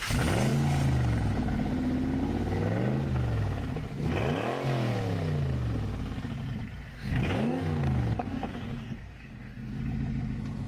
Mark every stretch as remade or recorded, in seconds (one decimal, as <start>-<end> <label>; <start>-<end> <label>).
0.0-6.9 recorded; 6.9-9.8 remade; 9.8-10.7 recorded